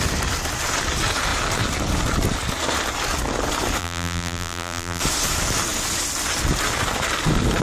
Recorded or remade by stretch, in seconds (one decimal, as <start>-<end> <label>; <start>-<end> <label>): 0.0-3.8 recorded; 3.8-5.0 remade; 5.0-7.6 recorded